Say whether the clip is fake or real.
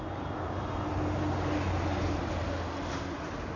real